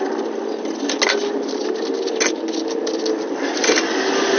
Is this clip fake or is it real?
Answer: real